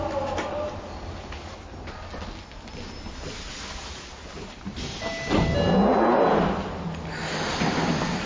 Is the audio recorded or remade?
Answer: recorded